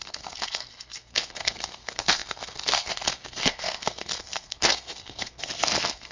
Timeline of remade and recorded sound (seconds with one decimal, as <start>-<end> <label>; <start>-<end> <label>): 0.0-6.1 remade

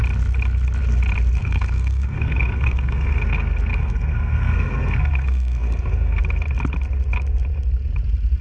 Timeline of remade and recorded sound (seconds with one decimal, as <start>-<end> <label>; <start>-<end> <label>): 0.0-1.4 recorded; 1.4-3.2 remade; 3.2-3.7 recorded; 3.7-6.2 remade; 6.2-8.4 recorded

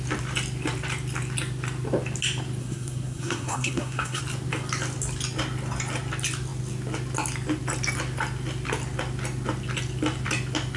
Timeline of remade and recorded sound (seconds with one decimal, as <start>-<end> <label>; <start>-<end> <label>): 0.0-2.6 recorded; 2.6-4.2 remade; 4.2-10.8 recorded

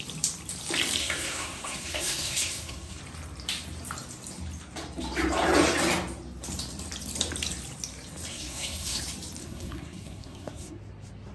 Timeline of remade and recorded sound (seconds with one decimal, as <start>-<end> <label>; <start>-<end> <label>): 0.0-1.0 recorded; 1.0-3.0 remade; 3.0-8.3 recorded; 8.3-9.0 remade; 9.0-9.4 recorded; 9.4-10.8 remade; 10.8-11.3 recorded

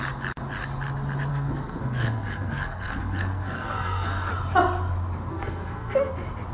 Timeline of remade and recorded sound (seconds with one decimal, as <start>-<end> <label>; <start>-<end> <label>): 0.0-1.3 recorded; 1.3-4.3 remade; 4.3-5.3 recorded; 5.3-6.1 remade; 6.1-6.5 recorded

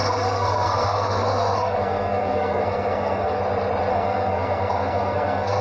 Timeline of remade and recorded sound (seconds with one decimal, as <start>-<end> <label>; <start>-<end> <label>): 0.0-3.4 remade; 3.4-3.9 recorded; 3.9-5.6 remade